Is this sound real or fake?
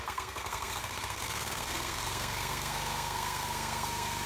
fake